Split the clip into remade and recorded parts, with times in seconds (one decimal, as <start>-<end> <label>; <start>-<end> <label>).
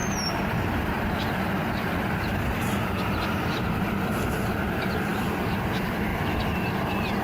0.0-4.3 remade; 4.3-7.2 recorded